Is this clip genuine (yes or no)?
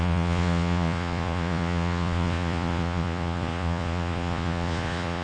no